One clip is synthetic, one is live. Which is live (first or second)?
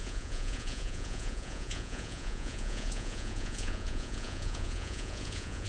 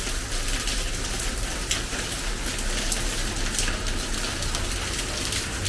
second